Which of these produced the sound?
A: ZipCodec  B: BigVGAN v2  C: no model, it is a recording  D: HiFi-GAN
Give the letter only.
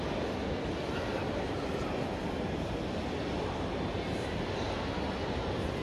C